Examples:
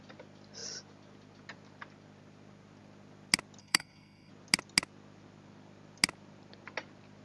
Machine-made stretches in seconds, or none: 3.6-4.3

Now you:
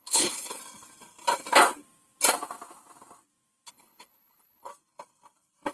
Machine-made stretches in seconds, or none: 0.0-0.6; 3.7-4.7

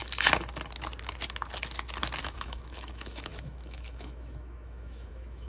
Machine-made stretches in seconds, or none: 2.2-5.5

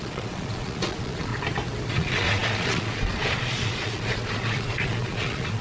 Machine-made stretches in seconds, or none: 0.0-1.3; 1.9-5.6

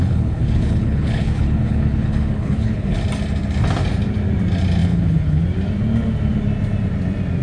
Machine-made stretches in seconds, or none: 0.0-3.0; 4.8-5.4